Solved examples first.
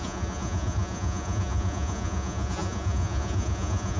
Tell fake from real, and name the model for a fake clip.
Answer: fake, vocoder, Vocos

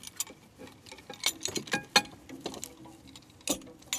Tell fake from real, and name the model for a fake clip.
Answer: real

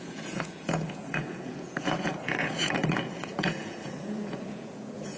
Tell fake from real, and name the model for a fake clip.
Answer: fake, vocoder, Vocos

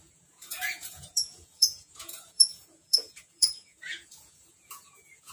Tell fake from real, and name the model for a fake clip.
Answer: fake, vocoder, Vocos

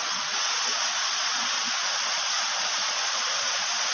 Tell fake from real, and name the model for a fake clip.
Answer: fake, vocoder, Vocos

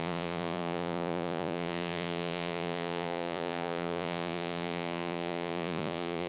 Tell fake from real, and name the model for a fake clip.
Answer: fake, vocoder, Vocos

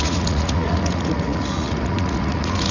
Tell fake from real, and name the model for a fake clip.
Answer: fake, vocoder, Vocos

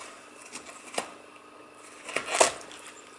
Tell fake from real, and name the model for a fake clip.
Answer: real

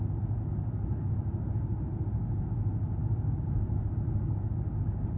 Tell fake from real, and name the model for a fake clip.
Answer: real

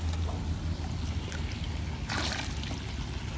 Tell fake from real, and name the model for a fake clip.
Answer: real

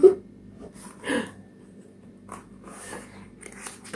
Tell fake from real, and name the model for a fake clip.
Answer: real